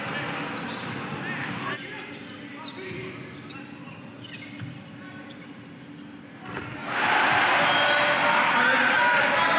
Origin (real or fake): real